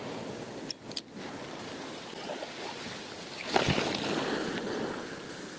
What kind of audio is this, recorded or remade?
recorded